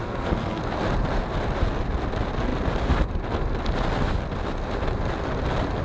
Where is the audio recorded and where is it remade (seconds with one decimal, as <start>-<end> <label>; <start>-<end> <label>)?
0.0-0.6 remade; 0.6-5.8 recorded